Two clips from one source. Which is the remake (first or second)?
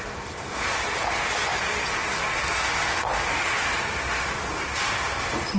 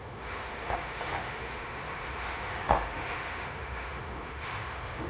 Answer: second